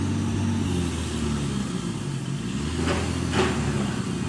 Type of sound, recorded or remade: recorded